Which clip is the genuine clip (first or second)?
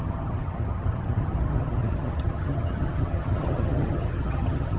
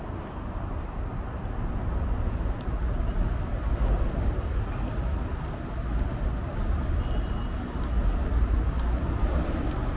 second